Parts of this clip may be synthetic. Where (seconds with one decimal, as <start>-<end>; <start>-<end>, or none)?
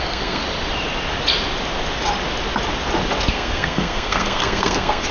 0.0-0.4; 3.3-5.1